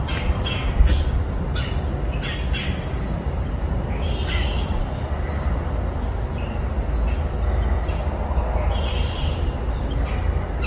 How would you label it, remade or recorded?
recorded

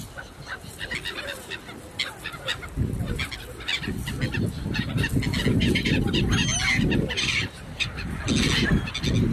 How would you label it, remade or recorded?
recorded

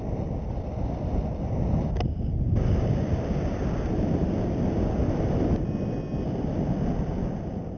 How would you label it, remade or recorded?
recorded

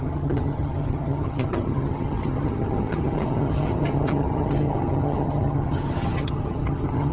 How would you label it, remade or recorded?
remade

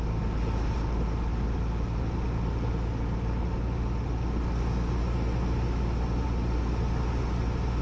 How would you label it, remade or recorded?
recorded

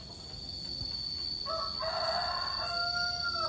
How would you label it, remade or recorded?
recorded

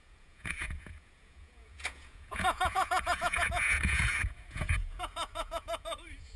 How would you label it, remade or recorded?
remade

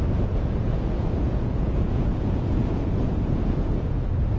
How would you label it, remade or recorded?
remade